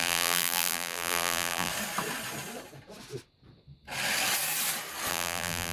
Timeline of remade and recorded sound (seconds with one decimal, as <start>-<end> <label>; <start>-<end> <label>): 0.0-1.7 remade; 1.7-5.1 recorded; 5.1-5.7 remade